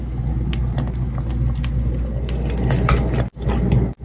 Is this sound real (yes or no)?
yes